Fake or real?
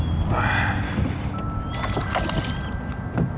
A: real